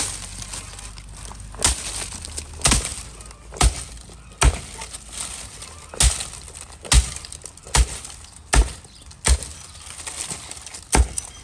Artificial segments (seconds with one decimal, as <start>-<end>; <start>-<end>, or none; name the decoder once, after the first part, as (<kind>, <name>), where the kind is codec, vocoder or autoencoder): none